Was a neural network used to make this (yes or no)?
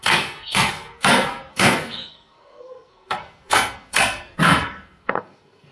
yes